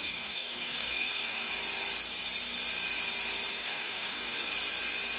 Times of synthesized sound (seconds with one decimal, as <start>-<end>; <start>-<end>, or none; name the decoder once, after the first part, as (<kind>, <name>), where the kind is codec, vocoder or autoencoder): 0.0-1.5 (codec, DAC); 3.5-4.5